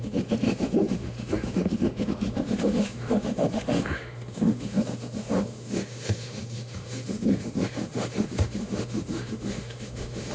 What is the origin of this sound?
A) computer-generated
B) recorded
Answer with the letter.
A